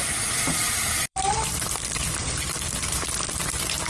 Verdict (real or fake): fake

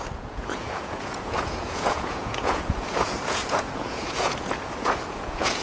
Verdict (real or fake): fake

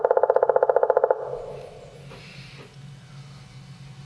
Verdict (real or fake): real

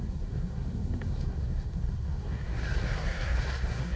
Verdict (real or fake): fake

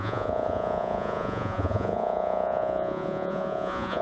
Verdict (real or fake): fake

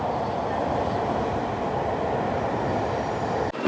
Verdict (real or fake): real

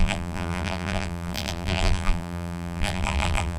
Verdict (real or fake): fake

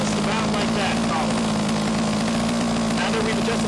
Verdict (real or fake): real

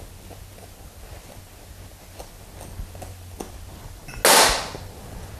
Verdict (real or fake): real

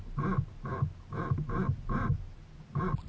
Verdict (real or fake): real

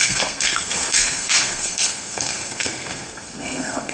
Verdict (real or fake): fake